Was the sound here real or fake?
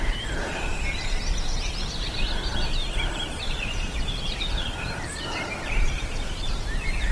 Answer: fake